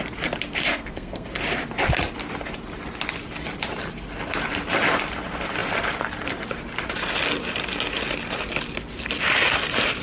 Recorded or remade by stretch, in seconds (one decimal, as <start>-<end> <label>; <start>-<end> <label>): 0.0-0.7 recorded; 0.7-1.3 remade; 1.3-10.0 recorded